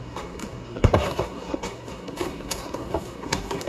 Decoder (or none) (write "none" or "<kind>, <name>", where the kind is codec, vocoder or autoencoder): codec, SNAC